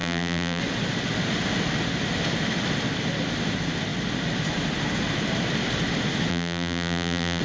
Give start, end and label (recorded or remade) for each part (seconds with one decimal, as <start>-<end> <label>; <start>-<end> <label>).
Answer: 0.0-0.6 remade; 0.6-6.3 recorded; 6.3-7.4 remade